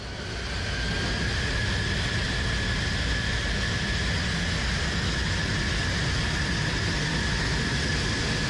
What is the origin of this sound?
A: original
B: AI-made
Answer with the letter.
A